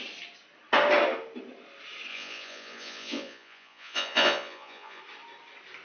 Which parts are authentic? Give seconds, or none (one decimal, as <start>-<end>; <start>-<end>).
0.0-2.1; 5.0-5.8